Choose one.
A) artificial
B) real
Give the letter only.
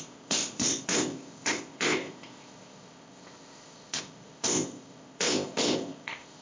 A